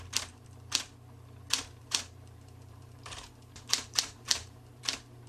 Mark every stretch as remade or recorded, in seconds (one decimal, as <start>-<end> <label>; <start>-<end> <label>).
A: 0.0-1.8 recorded; 1.8-4.8 remade; 4.8-5.3 recorded